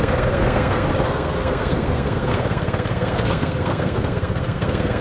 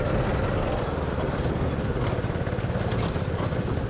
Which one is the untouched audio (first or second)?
second